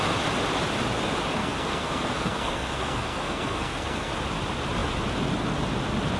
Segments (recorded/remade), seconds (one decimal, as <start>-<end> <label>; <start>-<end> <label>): 0.0-1.4 recorded; 1.4-4.1 remade; 4.1-6.2 recorded